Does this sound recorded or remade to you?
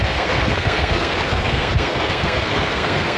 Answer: remade